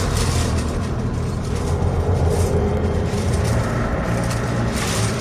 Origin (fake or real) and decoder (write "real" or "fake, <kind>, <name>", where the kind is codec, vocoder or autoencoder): fake, vocoder, BigVGAN v2